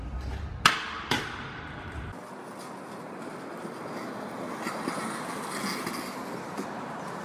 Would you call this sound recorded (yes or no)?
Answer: yes